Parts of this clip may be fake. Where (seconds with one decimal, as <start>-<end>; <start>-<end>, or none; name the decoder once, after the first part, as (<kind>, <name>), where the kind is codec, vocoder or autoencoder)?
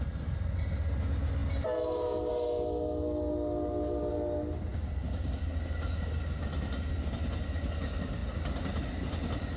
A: none